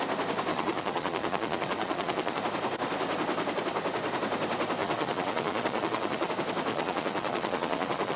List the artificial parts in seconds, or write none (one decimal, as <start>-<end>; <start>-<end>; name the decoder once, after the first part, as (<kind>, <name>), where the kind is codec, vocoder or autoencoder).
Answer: 0.5-2.4 (vocoder, Vocos); 4.8-6.3; 6.7-8.2